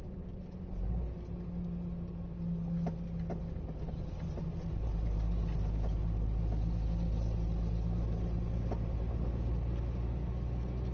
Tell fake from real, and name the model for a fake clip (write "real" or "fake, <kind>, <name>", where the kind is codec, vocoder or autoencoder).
real